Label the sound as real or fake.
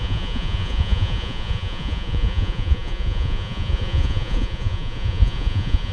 fake